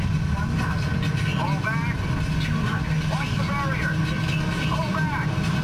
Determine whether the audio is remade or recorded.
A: recorded